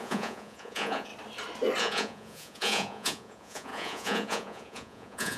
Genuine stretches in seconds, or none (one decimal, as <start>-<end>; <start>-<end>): 1.1-1.8